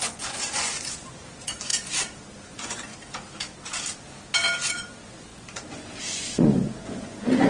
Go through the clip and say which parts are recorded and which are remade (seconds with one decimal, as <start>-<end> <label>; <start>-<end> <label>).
0.0-1.7 remade; 1.7-2.4 recorded; 2.4-2.9 remade; 2.9-4.7 recorded; 4.7-7.5 remade

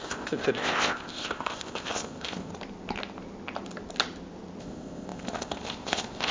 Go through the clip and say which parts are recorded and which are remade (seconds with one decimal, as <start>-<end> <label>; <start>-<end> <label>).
0.0-2.5 remade; 2.5-4.6 recorded; 4.6-6.3 remade

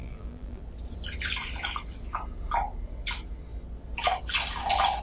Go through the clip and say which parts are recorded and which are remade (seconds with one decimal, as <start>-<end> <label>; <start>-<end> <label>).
0.0-0.6 remade; 0.6-5.0 recorded

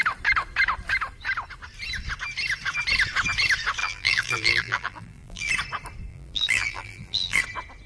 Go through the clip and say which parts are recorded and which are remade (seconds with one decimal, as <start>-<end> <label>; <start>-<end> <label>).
0.0-3.8 recorded; 3.8-5.5 remade; 5.5-6.1 recorded; 6.1-7.4 remade; 7.4-7.9 recorded

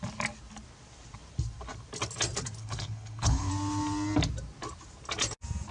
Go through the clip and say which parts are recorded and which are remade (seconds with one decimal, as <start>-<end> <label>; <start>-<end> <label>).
0.0-2.6 recorded; 2.6-3.5 remade; 3.5-5.7 recorded

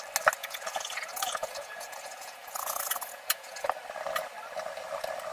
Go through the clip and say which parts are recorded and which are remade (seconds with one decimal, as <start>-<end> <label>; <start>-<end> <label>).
0.0-0.4 recorded; 0.4-3.6 remade; 3.6-5.3 recorded

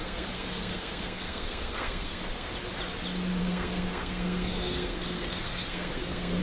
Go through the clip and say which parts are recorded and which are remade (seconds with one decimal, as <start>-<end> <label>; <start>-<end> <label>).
0.0-2.5 remade; 2.5-3.4 recorded; 3.4-6.4 remade

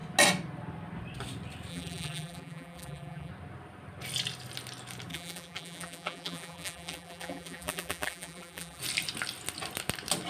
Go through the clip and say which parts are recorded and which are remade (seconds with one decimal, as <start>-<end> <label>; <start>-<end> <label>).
0.0-1.7 recorded; 1.7-3.3 remade; 3.3-5.1 recorded; 5.1-8.8 remade; 8.8-10.3 recorded